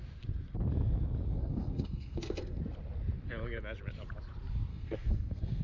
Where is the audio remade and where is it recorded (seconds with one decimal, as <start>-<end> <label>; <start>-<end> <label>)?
0.0-1.3 recorded; 1.3-2.6 remade; 2.6-4.7 recorded; 4.7-5.6 remade